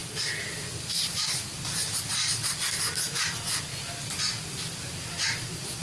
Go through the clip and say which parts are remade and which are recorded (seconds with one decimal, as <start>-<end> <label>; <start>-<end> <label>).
0.0-2.1 remade; 2.1-3.7 recorded; 3.7-5.8 remade